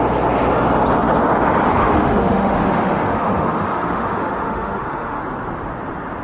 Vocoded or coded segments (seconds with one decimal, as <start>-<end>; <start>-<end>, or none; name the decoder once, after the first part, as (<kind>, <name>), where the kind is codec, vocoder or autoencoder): 1.8-5.2 (autoencoder, DAC-VAE)